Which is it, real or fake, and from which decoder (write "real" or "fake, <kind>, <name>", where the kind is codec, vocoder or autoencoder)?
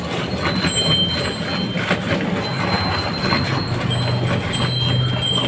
real